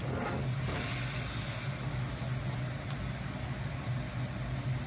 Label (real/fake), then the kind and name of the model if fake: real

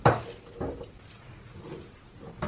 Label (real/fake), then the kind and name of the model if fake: real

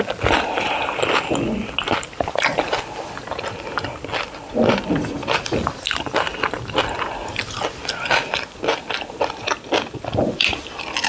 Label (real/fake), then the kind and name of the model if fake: real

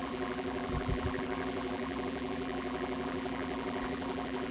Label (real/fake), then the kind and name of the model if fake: fake, vocoder, BigVGAN v2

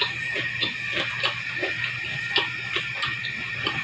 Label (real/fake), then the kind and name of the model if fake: real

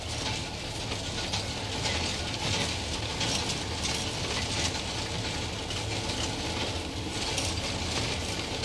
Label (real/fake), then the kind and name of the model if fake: real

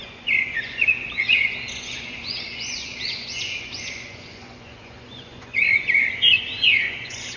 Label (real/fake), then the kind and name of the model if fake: fake, vocoder, Vocos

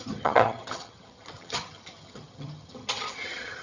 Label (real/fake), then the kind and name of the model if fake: fake, vocoder, HiFi-GAN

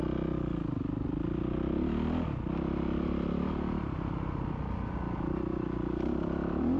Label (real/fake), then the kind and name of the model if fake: real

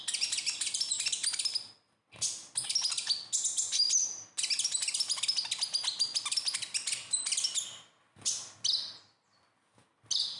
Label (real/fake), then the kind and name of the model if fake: real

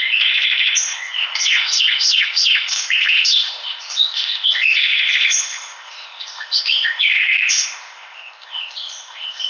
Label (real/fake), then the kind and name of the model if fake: fake, codec, ZipCodec